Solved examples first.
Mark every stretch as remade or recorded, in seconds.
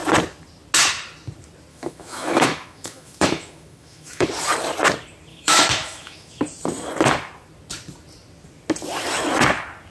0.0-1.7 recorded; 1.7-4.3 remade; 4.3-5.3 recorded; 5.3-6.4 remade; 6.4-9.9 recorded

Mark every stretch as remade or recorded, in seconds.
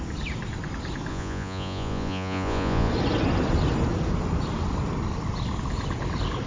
0.0-1.1 recorded; 1.1-2.9 remade; 2.9-6.5 recorded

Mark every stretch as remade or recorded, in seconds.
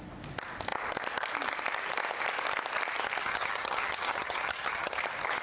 0.0-3.2 recorded; 3.2-5.0 remade; 5.0-5.4 recorded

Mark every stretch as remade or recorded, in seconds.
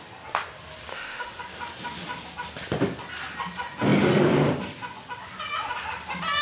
0.0-0.9 recorded; 0.9-1.4 remade; 1.4-6.4 recorded